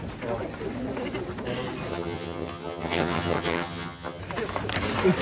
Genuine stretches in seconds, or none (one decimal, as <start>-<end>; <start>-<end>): 0.0-1.9; 4.2-5.2